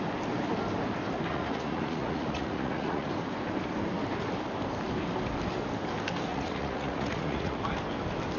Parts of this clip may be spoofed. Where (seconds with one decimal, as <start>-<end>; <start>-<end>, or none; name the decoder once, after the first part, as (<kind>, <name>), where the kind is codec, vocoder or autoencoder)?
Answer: 1.3-3.1 (vocoder, Vocos); 6.3-7.6